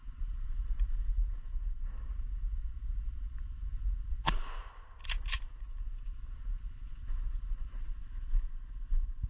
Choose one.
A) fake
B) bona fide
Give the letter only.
B